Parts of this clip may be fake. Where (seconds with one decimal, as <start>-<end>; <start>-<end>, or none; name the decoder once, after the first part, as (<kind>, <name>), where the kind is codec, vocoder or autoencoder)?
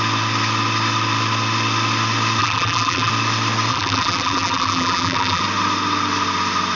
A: 2.4-3.1 (vocoder, BigVGAN v2); 3.7-5.4